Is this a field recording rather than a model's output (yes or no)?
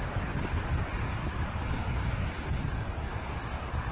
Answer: yes